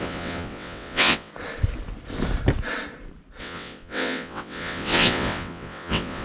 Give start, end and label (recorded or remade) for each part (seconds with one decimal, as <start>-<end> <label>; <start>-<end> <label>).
0.0-1.3 remade; 1.3-3.4 recorded; 3.4-6.2 remade